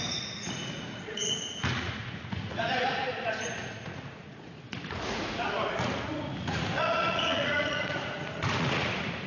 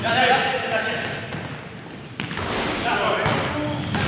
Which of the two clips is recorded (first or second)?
second